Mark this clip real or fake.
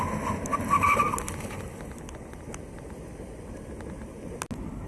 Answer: real